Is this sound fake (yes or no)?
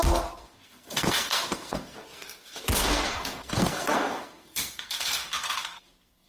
yes